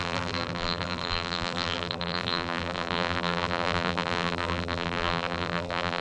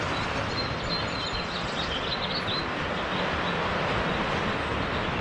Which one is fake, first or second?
first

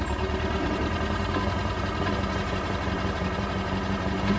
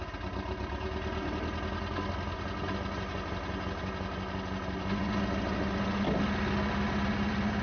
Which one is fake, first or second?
first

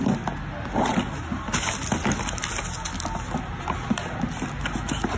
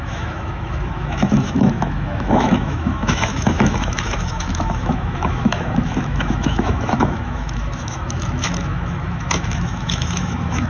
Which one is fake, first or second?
second